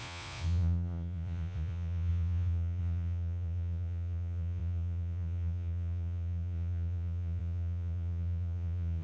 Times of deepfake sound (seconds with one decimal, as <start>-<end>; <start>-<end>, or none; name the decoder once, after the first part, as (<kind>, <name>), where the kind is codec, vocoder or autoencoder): 0.0-9.0 (vocoder, Vocos)